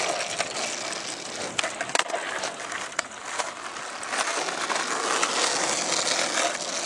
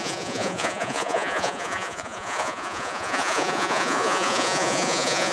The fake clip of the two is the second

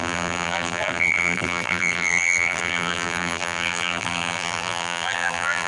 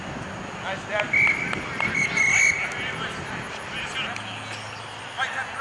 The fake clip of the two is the first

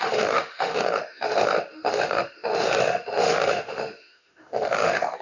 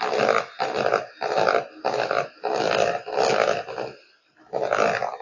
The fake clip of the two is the first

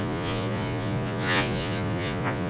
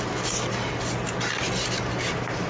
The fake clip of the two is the first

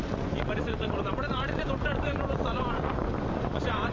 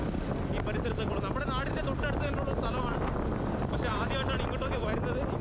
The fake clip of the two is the first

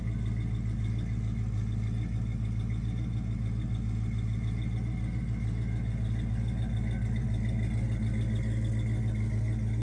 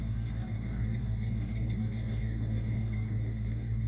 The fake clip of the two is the second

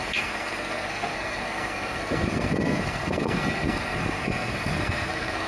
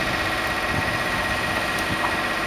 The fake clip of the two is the first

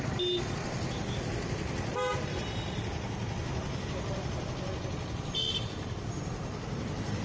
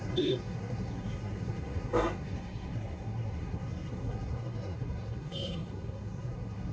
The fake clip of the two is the second